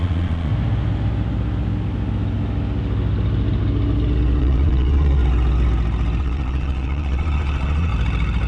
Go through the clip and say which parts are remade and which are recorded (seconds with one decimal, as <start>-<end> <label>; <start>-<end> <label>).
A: 0.0-0.5 remade; 0.5-4.4 recorded; 4.4-5.2 remade; 5.2-6.2 recorded; 6.2-7.9 remade; 7.9-8.5 recorded